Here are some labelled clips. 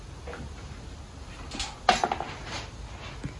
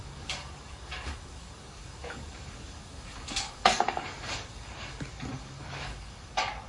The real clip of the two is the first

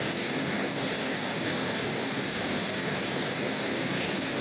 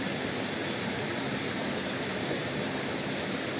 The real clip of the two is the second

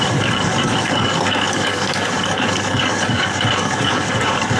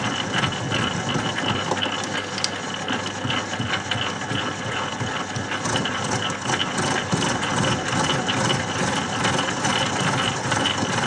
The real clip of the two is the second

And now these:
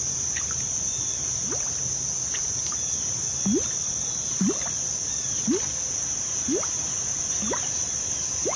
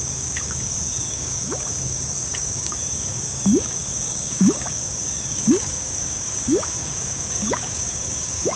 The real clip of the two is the first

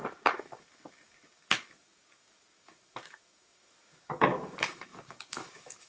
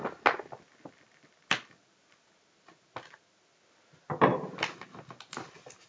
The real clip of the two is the second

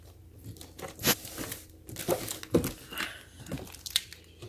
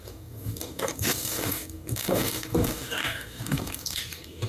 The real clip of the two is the first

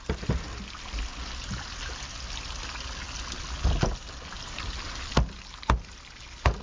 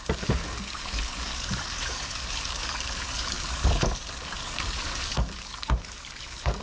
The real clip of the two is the first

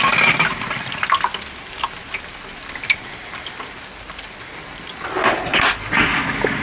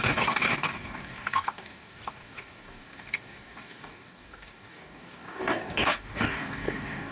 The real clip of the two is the first